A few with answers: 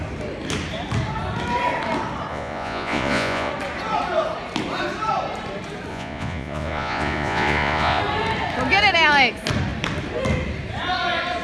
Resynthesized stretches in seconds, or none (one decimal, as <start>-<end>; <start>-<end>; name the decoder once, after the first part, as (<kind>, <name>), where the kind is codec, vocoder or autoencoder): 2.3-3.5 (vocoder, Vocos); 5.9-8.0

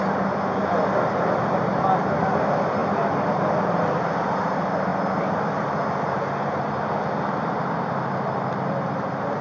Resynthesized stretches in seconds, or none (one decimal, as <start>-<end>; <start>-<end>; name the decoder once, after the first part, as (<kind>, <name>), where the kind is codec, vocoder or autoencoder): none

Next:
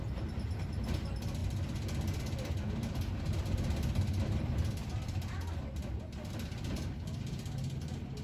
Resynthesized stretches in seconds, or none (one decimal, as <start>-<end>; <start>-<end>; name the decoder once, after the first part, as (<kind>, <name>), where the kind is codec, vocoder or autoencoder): none

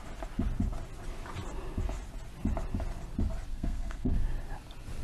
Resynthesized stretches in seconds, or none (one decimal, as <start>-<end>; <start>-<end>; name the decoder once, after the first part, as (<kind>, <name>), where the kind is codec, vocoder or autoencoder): 3.5-4.1 (codec, SNAC)

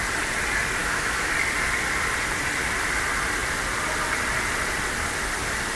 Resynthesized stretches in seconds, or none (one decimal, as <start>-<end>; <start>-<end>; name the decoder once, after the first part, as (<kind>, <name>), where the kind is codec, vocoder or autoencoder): 0.8-1.3 (autoencoder, DAC-VAE)

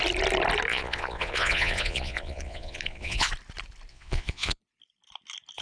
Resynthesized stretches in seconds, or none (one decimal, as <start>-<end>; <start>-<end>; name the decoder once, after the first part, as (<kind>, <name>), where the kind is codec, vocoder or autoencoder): 0.7-3.3 (vocoder, Vocos); 3.9-4.6